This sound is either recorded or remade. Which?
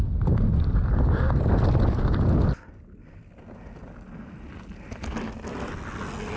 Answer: recorded